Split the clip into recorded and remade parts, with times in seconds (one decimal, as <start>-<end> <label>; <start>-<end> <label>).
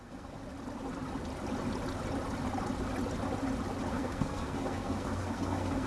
0.0-0.4 remade; 0.4-3.9 recorded; 3.9-5.9 remade